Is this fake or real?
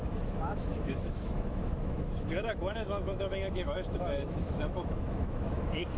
fake